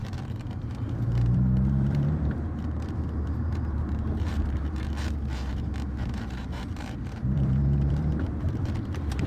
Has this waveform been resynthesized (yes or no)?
yes